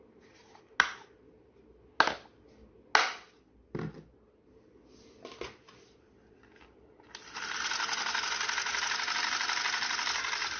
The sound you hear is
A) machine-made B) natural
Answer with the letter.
B